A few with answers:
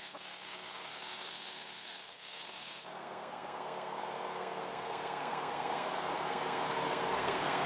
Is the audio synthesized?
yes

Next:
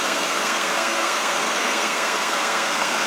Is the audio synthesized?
yes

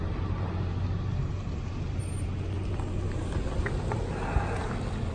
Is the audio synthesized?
no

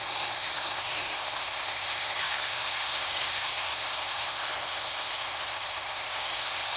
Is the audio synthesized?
yes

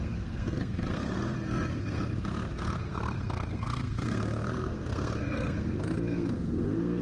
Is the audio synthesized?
yes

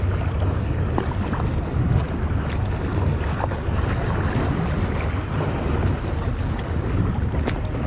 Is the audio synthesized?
no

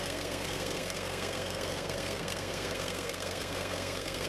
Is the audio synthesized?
yes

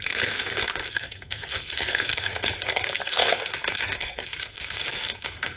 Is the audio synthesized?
yes